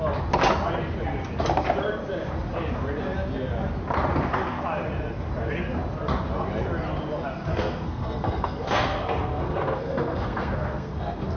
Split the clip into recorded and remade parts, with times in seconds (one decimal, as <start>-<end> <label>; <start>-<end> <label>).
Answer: 0.0-7.5 recorded; 7.5-11.4 remade